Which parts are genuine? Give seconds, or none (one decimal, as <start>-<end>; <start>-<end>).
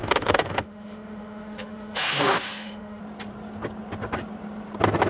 3.0-5.1